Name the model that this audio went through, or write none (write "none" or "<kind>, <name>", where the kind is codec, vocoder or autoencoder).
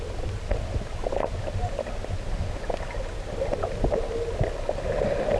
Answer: none